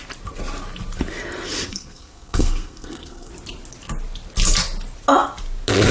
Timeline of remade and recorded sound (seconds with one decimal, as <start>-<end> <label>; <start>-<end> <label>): 0.0-1.7 recorded; 1.7-3.3 remade; 3.3-5.9 recorded